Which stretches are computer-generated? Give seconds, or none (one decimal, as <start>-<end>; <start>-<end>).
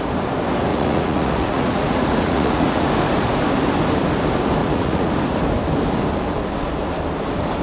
0.7-2.9; 4.6-5.1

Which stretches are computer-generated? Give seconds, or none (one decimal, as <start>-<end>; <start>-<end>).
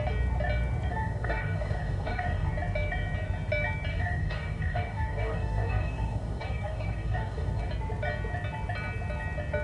0.9-2.5; 3.9-7.7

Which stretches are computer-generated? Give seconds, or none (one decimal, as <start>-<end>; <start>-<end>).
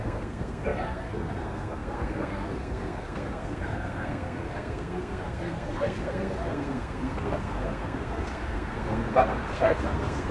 0.0-10.3